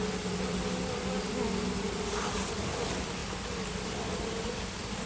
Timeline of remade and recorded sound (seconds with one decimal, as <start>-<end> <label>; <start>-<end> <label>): 0.0-5.1 recorded